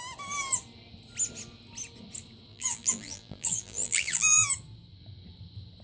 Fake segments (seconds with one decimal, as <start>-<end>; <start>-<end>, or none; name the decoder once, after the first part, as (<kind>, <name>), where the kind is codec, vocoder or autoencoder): 2.5-4.5 (vocoder, BigVGAN v2)